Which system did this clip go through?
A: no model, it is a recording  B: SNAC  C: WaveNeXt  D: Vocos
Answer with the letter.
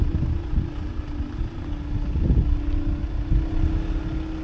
A